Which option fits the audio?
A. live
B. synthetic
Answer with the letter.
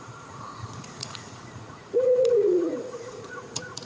B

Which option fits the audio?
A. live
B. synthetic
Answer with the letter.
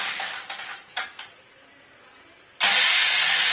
A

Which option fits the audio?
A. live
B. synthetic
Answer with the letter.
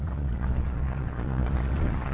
B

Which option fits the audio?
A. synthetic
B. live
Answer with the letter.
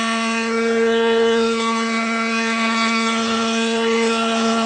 A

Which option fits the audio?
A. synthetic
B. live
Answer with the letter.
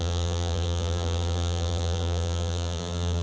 A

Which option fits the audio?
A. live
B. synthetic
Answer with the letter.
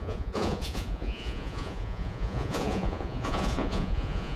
B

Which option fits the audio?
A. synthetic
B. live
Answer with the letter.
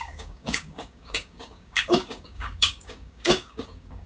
A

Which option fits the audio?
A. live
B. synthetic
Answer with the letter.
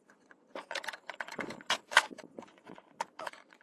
B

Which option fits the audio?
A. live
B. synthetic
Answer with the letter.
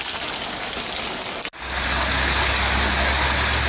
A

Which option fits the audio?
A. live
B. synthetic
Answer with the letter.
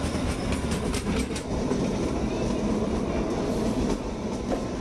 A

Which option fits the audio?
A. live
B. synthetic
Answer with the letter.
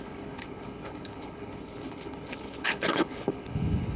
B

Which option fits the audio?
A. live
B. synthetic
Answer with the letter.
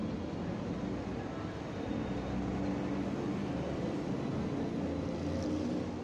A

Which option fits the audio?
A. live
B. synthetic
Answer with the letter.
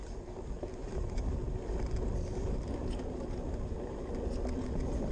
A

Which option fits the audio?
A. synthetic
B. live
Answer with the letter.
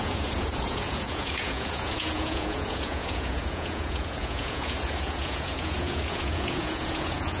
A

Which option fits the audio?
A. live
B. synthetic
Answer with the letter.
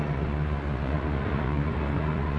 B